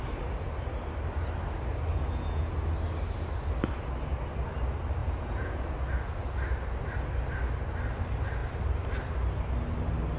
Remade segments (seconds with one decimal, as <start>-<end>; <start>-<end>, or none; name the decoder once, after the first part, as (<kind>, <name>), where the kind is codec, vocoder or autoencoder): 1.9-2.5 (vocoder, Vocos); 5.0-5.6